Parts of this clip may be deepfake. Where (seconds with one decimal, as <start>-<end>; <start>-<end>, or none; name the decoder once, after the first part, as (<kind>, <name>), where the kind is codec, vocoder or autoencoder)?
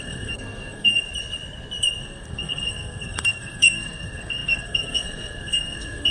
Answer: 0.0-1.0 (codec, SNAC); 2.0-6.1